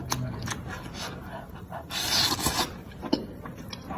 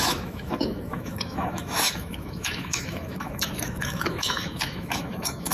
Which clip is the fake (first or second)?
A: second